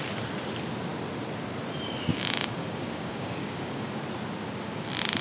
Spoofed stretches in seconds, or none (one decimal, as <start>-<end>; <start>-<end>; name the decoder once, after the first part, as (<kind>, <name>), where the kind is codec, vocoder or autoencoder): 2.1-4.0 (codec, DAC)